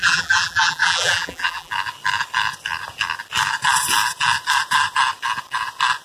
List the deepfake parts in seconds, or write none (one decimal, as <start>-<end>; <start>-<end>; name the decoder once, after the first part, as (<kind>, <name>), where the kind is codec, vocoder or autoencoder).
0.0-1.7 (vocoder, BigVGAN v2)